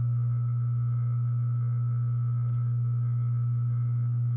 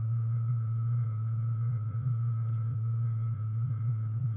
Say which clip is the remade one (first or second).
second